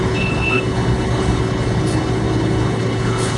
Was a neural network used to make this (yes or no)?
yes